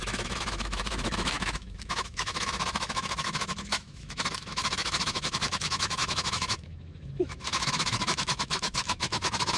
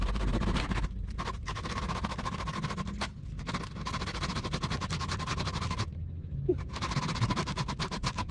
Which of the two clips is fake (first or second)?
first